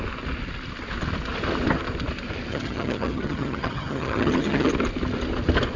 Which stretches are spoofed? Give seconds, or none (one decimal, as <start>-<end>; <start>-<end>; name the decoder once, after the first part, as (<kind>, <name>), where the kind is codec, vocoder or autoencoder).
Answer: 2.5-4.7 (vocoder, HiFi-GAN)